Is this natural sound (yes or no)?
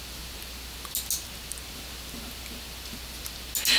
yes